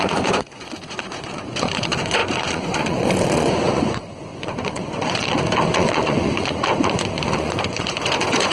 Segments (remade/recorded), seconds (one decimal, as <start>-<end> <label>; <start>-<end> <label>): 0.0-8.5 remade